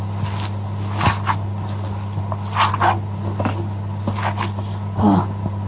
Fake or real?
real